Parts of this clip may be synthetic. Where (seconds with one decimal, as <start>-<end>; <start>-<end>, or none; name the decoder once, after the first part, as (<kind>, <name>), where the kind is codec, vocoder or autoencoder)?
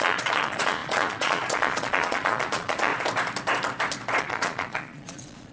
0.0-2.9 (vocoder, Vocos); 4.2-5.5